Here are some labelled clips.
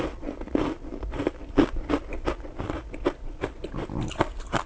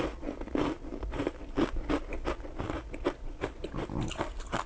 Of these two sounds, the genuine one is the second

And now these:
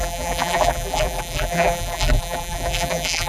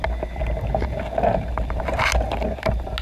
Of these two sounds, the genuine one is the second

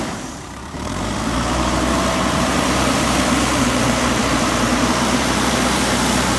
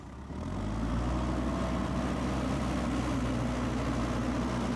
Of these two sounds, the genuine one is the second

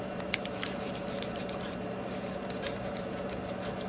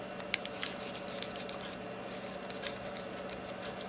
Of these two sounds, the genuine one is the second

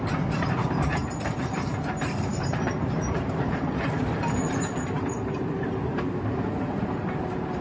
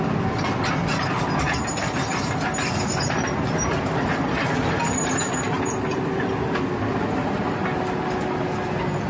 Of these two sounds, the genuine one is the second